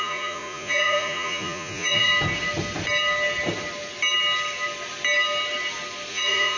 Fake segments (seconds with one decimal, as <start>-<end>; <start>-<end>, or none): 0.0-2.1; 6.1-6.6